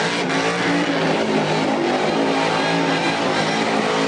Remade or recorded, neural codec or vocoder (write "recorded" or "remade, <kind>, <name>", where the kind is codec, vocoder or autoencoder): recorded